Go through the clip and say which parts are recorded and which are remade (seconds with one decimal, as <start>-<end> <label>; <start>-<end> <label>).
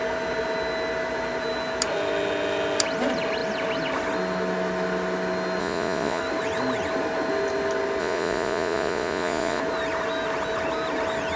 0.0-5.6 recorded; 5.6-6.2 remade; 6.2-8.0 recorded; 8.0-9.6 remade; 9.6-11.4 recorded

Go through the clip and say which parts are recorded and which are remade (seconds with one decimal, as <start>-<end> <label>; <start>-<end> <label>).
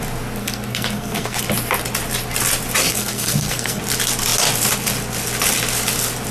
0.0-0.4 recorded; 0.4-1.4 remade; 1.4-2.8 recorded; 2.8-3.8 remade; 3.8-6.3 recorded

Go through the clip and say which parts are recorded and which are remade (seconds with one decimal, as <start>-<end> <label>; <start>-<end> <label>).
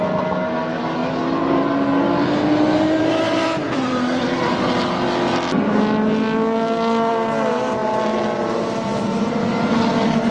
0.0-10.3 recorded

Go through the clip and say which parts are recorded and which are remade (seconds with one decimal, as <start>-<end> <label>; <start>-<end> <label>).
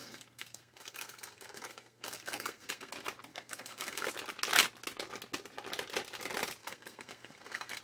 0.0-2.9 remade; 2.9-3.3 recorded; 3.3-4.1 remade; 4.1-6.6 recorded; 6.6-7.8 remade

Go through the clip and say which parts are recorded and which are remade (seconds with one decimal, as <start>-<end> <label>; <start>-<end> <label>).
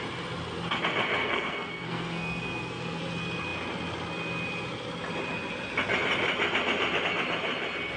0.0-1.2 recorded; 1.2-3.0 remade; 3.0-8.0 recorded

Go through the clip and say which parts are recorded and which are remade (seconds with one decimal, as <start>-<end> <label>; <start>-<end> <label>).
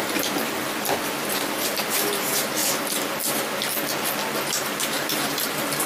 0.0-2.6 remade; 2.6-4.9 recorded; 4.9-5.9 remade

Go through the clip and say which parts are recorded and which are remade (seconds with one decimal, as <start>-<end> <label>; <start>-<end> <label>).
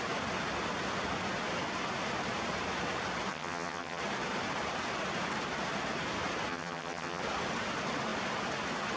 0.0-3.3 recorded; 3.3-4.0 remade; 4.0-6.5 recorded; 6.5-7.2 remade; 7.2-9.0 recorded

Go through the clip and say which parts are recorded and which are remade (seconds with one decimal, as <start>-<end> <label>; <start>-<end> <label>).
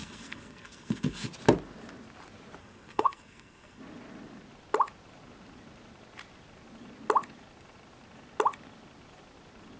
0.0-1.3 remade; 1.3-2.6 recorded; 2.6-3.8 remade; 3.8-9.8 recorded